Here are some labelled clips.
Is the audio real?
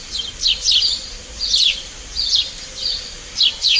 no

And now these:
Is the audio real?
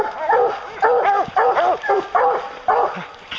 yes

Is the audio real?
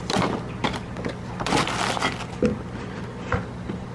yes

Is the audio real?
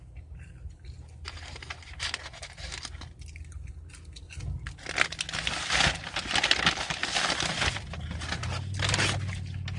yes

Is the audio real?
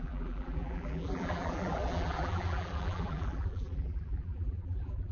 no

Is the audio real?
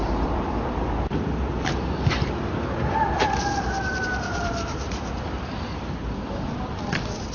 no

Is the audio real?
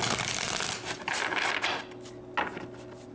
yes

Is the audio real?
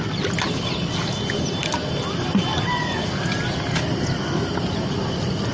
yes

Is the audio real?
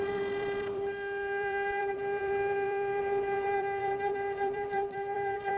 no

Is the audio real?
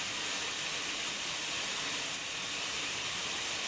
yes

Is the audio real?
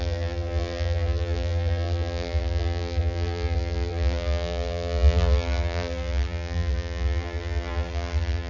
no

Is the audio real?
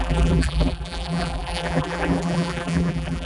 no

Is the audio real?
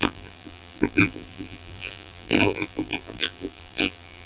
no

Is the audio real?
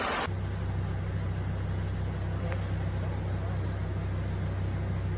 yes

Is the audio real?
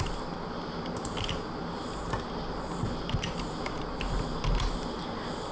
yes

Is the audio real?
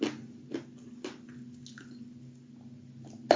yes